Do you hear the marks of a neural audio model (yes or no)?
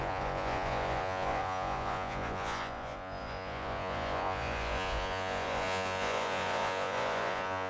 yes